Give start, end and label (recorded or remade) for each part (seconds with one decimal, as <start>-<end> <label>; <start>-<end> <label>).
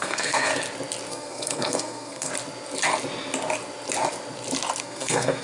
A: 0.0-0.5 remade; 0.5-1.1 recorded; 1.1-2.3 remade; 2.3-4.8 recorded; 4.8-5.4 remade